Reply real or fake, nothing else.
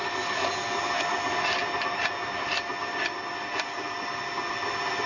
real